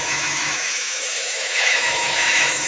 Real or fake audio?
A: fake